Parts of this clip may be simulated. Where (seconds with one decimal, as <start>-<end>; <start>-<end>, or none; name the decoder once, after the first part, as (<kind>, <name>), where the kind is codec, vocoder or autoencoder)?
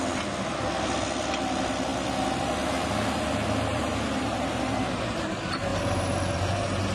3.7-4.8 (vocoder, BigVGAN v2); 5.7-6.9